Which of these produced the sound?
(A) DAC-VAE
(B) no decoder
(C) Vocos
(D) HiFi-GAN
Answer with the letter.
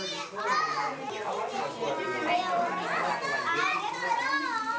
B